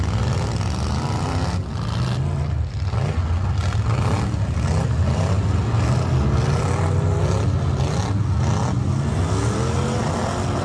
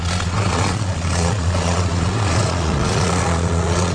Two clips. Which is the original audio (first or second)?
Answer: first